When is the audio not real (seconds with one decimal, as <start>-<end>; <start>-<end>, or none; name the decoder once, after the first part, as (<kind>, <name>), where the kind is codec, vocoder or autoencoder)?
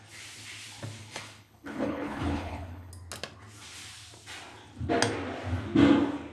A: 1.0-2.9 (codec, HILCodec)